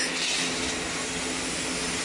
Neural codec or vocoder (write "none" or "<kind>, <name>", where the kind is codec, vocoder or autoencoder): none